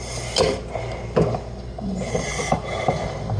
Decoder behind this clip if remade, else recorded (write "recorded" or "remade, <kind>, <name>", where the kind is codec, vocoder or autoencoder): recorded